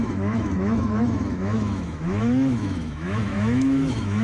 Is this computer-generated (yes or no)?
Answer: yes